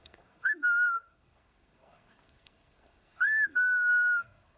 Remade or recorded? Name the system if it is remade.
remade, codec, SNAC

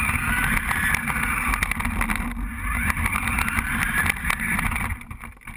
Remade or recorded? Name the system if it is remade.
recorded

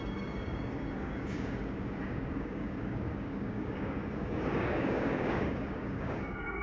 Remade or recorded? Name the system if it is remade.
remade, codec, DAC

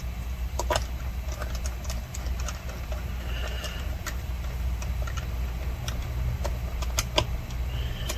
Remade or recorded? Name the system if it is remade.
recorded